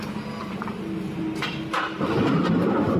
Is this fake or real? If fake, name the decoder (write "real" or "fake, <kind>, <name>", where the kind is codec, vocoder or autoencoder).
real